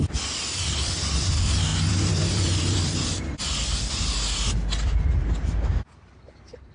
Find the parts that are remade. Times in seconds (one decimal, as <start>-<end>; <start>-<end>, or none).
1.7-3.7